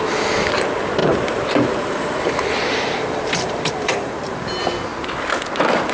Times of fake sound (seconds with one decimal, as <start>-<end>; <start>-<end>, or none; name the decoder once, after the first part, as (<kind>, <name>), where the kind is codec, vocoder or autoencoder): 1.0-4.5 (vocoder, BigVGAN v2)